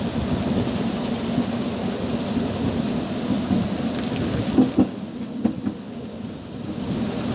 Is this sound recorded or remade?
recorded